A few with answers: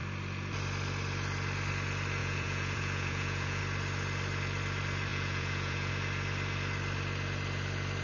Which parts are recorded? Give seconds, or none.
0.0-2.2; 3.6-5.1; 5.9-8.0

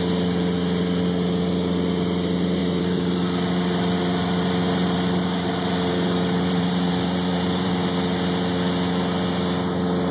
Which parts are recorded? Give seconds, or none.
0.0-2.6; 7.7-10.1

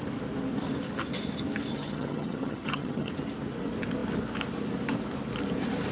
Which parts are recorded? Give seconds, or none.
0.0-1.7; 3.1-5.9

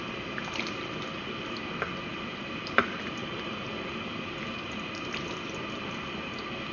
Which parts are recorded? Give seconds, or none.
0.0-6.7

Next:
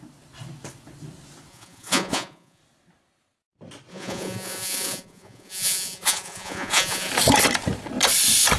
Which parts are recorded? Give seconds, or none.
0.0-1.5; 2.6-3.9; 7.1-8.6

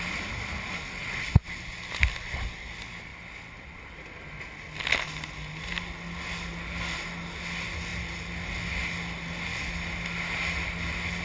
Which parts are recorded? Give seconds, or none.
0.0-11.2